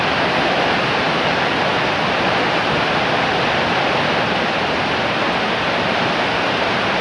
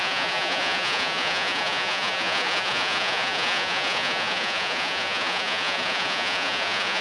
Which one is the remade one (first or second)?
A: second